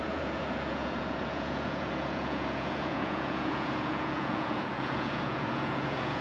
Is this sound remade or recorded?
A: remade